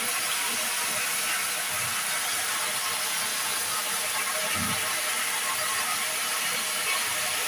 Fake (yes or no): no